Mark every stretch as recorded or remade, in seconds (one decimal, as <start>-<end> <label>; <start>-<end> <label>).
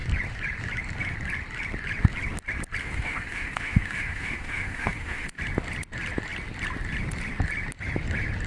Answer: 0.0-2.8 recorded; 2.8-5.4 remade; 5.4-8.5 recorded